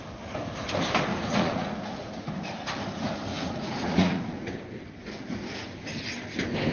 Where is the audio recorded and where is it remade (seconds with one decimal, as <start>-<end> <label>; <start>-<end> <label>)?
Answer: 0.0-1.1 recorded; 1.1-2.3 remade; 2.3-3.3 recorded; 3.3-4.5 remade; 4.5-6.7 recorded